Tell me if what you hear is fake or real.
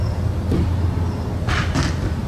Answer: real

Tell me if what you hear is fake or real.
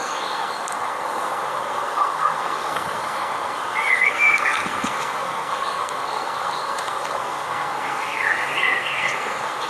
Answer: fake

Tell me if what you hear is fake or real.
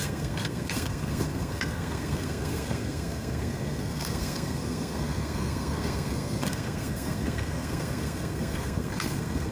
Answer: fake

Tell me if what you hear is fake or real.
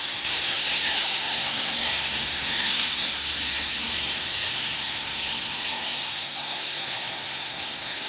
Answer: fake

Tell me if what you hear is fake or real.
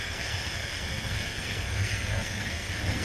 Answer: fake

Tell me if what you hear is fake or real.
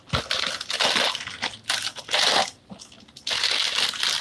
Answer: real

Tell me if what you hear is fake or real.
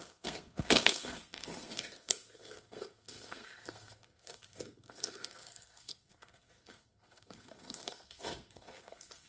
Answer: fake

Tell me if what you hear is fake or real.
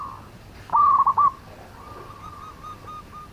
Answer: real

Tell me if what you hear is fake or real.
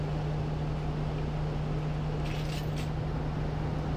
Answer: real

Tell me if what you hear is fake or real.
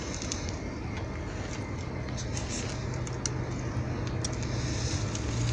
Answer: real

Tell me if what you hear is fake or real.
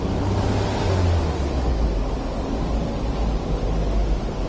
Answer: real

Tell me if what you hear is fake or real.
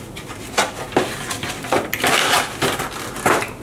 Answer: real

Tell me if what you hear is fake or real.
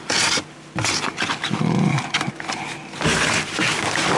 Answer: real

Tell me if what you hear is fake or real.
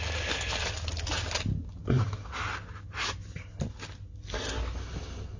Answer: real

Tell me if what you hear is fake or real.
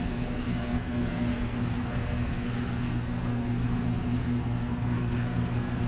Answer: fake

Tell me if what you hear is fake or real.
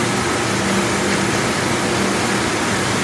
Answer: real